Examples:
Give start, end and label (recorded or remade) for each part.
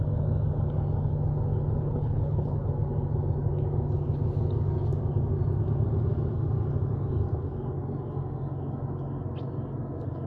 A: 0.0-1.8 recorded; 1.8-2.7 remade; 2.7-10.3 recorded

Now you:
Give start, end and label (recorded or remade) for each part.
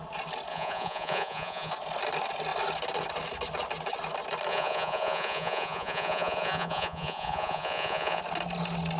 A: 0.0-0.5 recorded; 0.5-1.7 remade; 1.7-4.5 recorded; 4.5-8.2 remade; 8.2-9.0 recorded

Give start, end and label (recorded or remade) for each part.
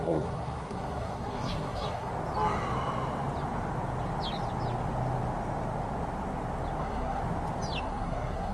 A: 0.0-2.1 remade; 2.1-6.8 recorded; 6.8-7.2 remade; 7.2-7.8 recorded; 7.8-8.5 remade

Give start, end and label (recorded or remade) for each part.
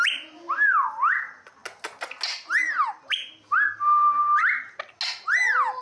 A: 0.0-5.8 recorded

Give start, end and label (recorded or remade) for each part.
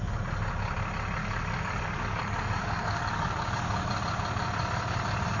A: 0.0-1.2 recorded; 1.2-3.9 remade; 3.9-5.4 recorded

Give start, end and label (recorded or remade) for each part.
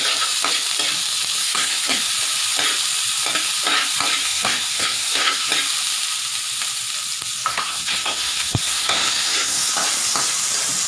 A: 0.0-1.4 recorded; 1.4-2.1 remade; 2.1-4.2 recorded; 4.2-5.5 remade; 5.5-7.5 recorded; 7.5-9.7 remade; 9.7-10.9 recorded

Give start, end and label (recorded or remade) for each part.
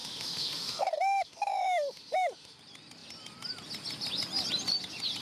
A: 0.0-2.6 remade; 2.6-5.2 recorded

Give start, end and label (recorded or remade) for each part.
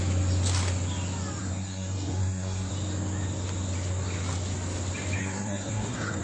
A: 0.0-1.4 recorded; 1.4-2.7 remade; 2.7-5.2 recorded; 5.2-6.2 remade